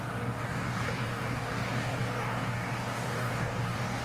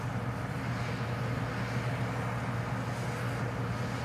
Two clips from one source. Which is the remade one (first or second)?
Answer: first